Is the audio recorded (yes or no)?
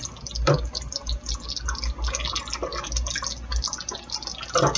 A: yes